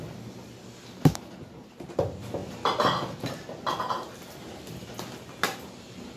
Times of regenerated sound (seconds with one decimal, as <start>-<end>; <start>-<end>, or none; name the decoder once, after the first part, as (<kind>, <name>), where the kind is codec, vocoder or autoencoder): none